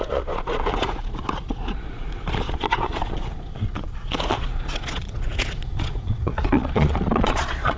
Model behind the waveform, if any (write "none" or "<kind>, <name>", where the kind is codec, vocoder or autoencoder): vocoder, Vocos